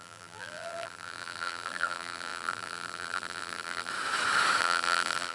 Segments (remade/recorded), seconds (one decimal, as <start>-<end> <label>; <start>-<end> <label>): 0.0-3.9 remade; 3.9-4.6 recorded; 4.6-5.3 remade